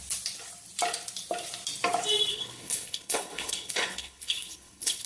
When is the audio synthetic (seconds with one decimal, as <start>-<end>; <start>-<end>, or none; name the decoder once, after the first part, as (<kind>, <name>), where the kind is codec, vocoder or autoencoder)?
2.3-5.1 (codec, HILCodec)